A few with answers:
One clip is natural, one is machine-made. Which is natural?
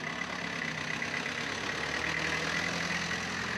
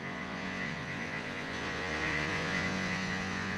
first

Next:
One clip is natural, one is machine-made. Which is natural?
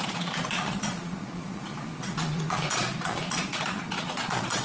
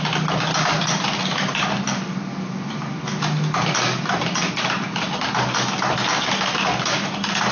second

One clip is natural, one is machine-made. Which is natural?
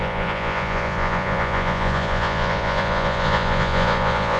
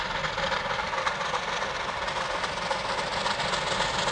second